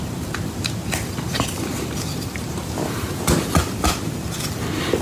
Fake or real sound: fake